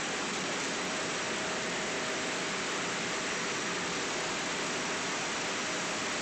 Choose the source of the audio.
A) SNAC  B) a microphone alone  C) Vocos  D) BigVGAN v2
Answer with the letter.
B